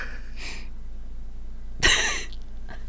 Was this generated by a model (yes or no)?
no